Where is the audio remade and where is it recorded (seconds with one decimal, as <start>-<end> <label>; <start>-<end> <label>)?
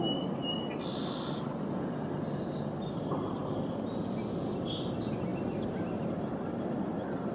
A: 0.0-7.3 recorded